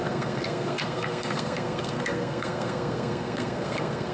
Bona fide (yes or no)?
no